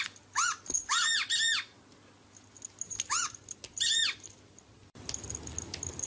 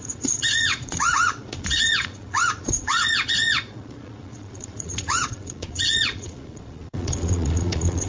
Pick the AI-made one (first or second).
second